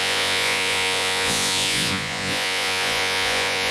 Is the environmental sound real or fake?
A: fake